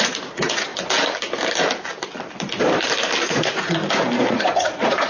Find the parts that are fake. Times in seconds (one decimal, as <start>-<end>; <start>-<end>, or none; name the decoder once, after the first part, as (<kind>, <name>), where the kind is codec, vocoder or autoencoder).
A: 0.0-0.7 (vocoder, Vocos); 3.2-3.8; 4.3-5.1